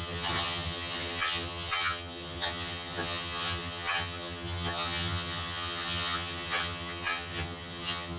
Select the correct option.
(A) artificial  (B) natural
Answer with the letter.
A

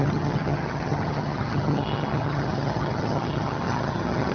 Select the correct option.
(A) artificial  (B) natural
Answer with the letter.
A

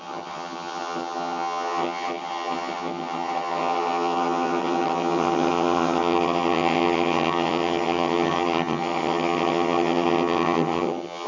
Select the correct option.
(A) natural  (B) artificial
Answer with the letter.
B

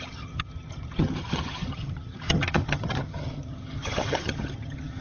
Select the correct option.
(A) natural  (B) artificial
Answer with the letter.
B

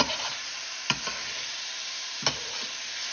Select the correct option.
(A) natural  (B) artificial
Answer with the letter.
A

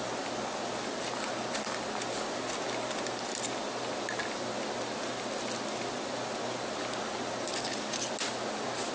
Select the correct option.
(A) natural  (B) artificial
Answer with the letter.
A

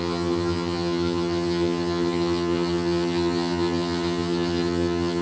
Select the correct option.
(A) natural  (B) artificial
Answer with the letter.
B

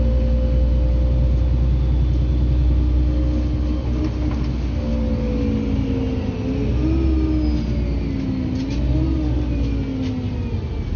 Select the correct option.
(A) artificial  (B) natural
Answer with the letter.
B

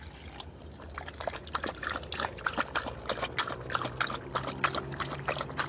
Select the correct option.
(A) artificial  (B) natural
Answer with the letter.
B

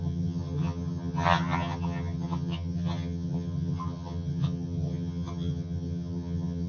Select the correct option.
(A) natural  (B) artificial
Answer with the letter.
B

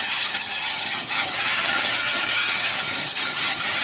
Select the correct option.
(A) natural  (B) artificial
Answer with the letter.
B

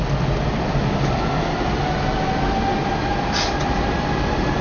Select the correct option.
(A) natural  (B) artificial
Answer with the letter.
A